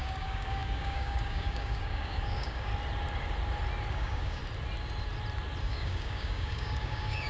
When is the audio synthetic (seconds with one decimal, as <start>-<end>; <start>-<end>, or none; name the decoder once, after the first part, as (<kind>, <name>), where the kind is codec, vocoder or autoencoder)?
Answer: 0.0-2.7 (codec, DAC); 3.9-4.4; 5.6-7.3